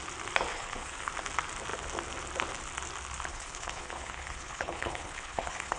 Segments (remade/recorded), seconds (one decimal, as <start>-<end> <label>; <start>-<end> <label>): 0.0-0.5 recorded; 0.5-1.1 remade; 1.1-3.3 recorded; 3.3-5.8 remade